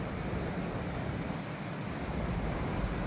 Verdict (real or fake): real